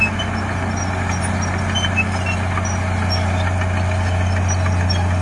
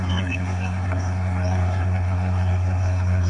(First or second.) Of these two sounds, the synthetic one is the second